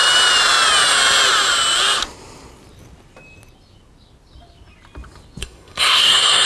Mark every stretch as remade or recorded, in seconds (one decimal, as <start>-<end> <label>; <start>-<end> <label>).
0.0-5.4 recorded; 5.4-6.5 remade